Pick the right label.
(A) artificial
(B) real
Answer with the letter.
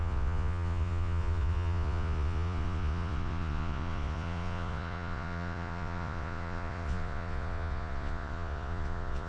A